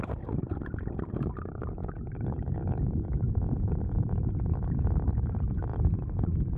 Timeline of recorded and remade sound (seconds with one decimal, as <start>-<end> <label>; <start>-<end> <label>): 0.0-1.8 recorded; 1.8-3.3 remade; 3.3-6.6 recorded